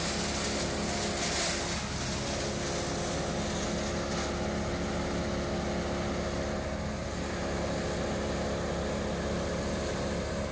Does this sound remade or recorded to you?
recorded